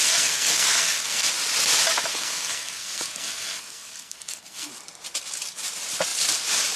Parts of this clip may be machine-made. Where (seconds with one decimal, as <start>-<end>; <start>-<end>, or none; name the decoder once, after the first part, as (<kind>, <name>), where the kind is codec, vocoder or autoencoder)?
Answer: 0.0-1.3 (codec, SNAC); 2.1-4.7